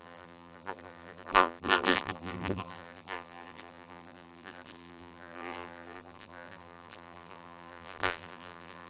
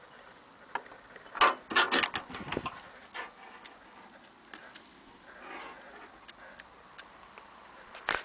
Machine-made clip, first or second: first